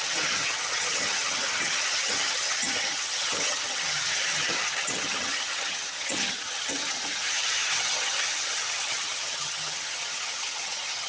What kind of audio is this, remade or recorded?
remade